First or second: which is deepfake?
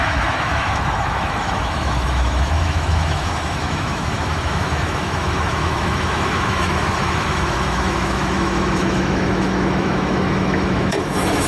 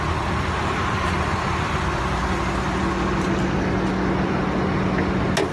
first